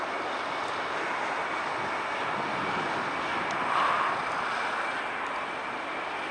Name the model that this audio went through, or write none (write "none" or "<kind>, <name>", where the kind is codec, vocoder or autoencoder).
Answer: none